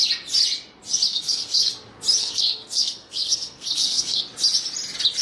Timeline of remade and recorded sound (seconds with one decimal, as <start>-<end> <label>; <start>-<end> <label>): 0.0-1.1 recorded; 1.1-1.7 remade; 1.7-2.2 recorded; 2.2-4.2 remade; 4.2-5.2 recorded